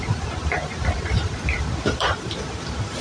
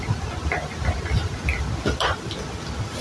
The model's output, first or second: first